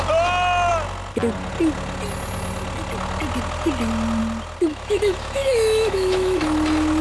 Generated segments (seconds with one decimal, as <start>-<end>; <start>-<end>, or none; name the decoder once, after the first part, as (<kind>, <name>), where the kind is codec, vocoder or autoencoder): 4.7-6.4 (autoencoder, DAC-VAE)